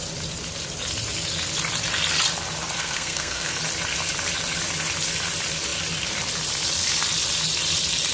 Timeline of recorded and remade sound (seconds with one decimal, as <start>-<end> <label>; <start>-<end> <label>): 0.0-2.8 recorded; 2.8-3.6 remade; 3.6-8.1 recorded

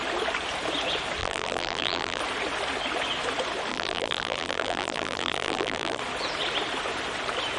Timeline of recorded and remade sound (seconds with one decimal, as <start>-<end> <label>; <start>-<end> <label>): 0.0-1.2 recorded; 1.2-2.2 remade; 2.2-3.7 recorded; 3.7-6.0 remade; 6.0-7.6 recorded

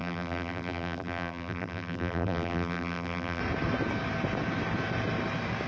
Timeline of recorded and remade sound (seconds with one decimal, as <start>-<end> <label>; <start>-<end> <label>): 0.0-3.4 remade; 3.4-5.7 recorded

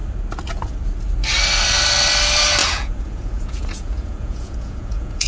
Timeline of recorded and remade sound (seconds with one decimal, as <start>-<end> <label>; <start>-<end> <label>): 0.0-2.6 recorded; 2.6-5.3 remade

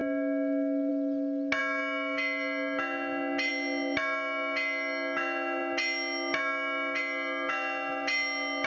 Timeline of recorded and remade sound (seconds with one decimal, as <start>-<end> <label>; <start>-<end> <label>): 0.0-8.7 recorded

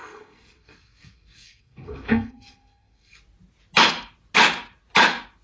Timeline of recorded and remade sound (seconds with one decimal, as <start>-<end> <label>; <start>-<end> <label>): 0.0-3.2 remade; 3.2-5.4 recorded